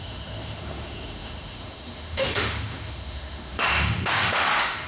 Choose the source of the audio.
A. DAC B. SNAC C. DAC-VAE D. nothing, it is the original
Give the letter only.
C